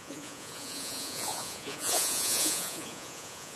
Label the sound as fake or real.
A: fake